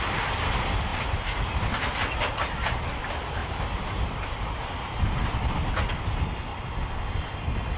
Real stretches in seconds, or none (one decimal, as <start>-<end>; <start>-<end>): 0.0-3.4; 4.6-7.8